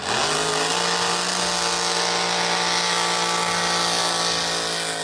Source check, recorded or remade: recorded